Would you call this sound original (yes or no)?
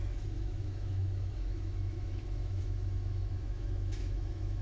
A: no